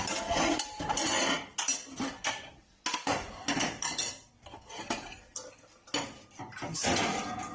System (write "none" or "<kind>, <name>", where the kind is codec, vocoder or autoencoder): none